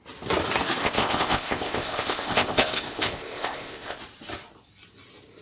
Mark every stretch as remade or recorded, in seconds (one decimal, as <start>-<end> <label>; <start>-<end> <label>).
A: 0.0-0.8 recorded; 0.8-4.0 remade; 4.0-5.4 recorded